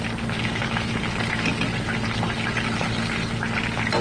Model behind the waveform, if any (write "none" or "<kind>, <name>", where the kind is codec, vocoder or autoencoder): none